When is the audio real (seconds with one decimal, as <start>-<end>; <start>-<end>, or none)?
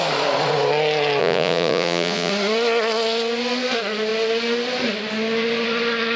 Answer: 0.0-1.2; 2.3-6.2